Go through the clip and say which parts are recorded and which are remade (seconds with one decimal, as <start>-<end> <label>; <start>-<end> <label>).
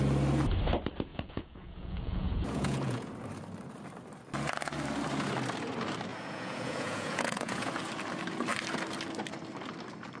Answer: 0.0-1.1 recorded; 1.1-3.1 remade; 3.1-6.1 recorded; 6.1-7.7 remade; 7.7-10.2 recorded